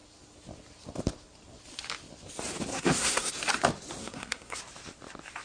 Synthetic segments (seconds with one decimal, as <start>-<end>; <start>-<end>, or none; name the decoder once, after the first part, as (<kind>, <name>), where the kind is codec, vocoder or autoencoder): 2.7-3.3 (codec, SNAC); 4.0-4.6